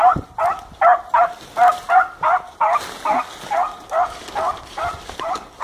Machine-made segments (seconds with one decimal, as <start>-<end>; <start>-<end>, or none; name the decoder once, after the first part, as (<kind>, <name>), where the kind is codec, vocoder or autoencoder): none